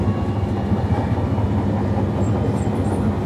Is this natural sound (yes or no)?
yes